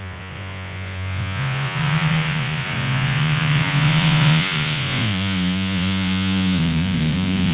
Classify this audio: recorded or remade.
remade